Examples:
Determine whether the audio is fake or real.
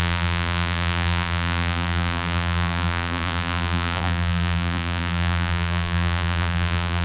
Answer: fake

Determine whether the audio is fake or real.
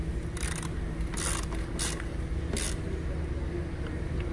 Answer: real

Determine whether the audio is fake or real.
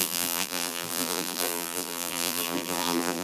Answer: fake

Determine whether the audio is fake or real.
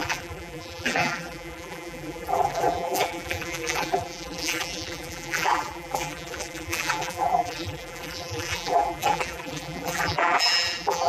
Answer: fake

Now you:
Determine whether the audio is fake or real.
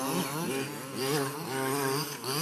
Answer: real